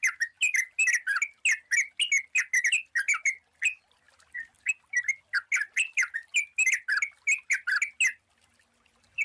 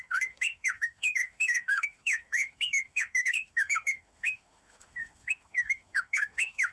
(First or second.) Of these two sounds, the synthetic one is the second